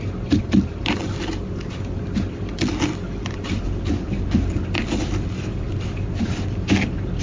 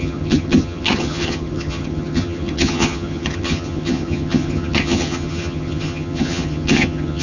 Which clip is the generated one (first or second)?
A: second